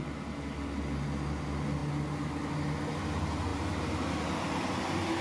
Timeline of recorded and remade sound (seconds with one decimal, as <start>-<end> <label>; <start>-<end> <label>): 0.0-3.5 recorded; 3.5-4.0 remade; 4.0-5.2 recorded